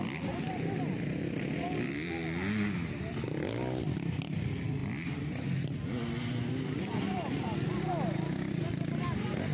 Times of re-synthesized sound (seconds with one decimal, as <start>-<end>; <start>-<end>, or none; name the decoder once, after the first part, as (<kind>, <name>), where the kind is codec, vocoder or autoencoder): none